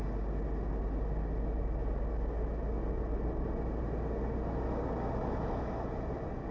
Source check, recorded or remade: recorded